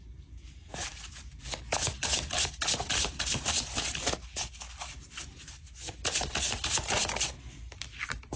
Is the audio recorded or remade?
recorded